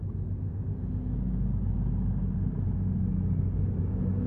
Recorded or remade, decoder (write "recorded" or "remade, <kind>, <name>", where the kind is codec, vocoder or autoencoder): recorded